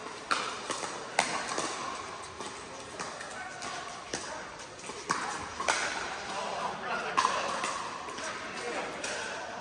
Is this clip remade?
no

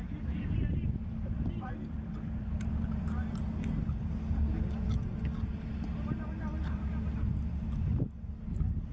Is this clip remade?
no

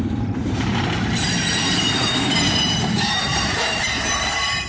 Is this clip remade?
yes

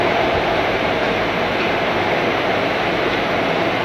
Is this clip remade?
yes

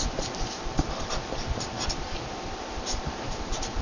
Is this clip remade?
yes